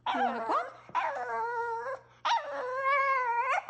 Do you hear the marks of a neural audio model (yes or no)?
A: no